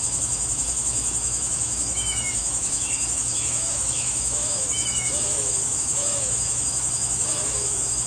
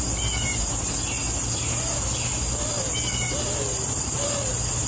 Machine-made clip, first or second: first